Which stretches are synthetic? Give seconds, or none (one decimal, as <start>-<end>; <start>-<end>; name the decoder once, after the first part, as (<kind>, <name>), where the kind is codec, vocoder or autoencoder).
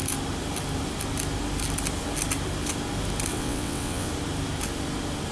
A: 3.3-4.1 (vocoder, WaveNeXt)